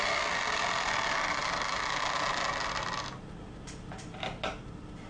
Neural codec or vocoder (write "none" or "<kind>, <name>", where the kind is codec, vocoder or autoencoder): none